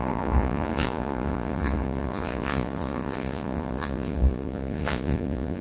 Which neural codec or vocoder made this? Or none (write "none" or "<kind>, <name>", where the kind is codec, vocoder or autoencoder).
vocoder, Vocos